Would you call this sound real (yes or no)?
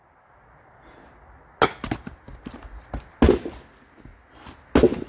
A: yes